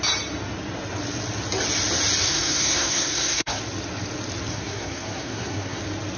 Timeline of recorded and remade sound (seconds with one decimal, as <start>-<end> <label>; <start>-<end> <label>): 0.0-2.2 recorded; 2.2-3.6 remade; 3.6-4.5 recorded; 4.5-5.8 remade; 5.8-6.2 recorded